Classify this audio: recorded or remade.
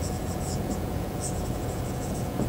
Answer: remade